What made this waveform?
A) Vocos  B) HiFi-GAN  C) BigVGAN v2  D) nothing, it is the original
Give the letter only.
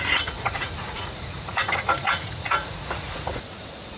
A